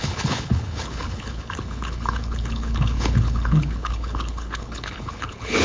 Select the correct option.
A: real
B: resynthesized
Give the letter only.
B